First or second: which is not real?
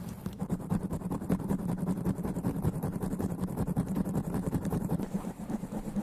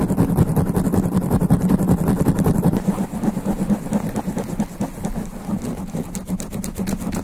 first